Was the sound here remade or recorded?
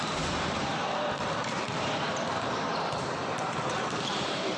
remade